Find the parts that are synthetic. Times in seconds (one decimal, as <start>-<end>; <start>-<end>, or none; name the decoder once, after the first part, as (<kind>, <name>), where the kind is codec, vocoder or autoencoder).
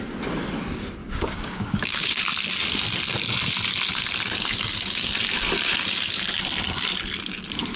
1.0-2.2 (codec, DAC)